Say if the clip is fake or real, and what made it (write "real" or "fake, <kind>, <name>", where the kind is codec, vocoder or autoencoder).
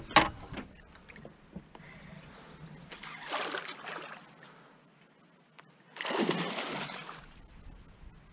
real